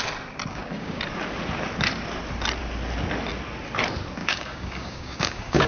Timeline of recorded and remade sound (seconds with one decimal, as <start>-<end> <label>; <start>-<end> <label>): 0.0-0.5 recorded; 0.5-1.0 remade; 1.0-4.2 recorded; 4.2-5.7 remade

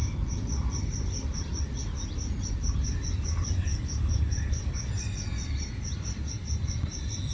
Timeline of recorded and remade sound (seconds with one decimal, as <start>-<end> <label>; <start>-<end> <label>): 0.0-3.7 recorded; 3.7-4.9 remade; 4.9-7.3 recorded

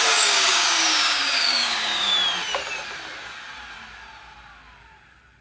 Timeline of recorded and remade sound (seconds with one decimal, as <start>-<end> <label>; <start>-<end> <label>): 0.0-2.1 remade; 2.1-5.4 recorded

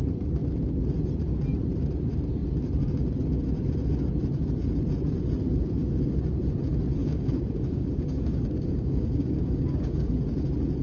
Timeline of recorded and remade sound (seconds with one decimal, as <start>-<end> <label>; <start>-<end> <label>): 0.0-7.0 recorded; 7.0-10.1 remade; 10.1-10.8 recorded

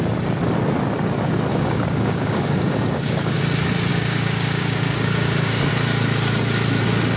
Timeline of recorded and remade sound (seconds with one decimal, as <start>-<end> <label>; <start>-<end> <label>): 0.0-1.5 recorded; 1.5-3.4 remade; 3.4-3.9 recorded; 3.9-5.7 remade; 5.7-7.2 recorded

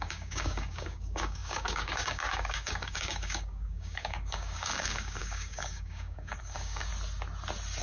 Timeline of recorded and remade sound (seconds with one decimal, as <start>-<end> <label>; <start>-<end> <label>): 0.0-6.9 remade; 6.9-7.8 recorded

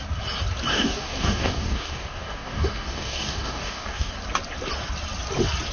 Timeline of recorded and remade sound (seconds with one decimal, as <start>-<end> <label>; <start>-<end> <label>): 0.0-0.7 recorded; 0.7-4.1 remade; 4.1-5.7 recorded